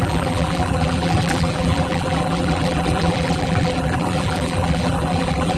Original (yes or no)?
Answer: no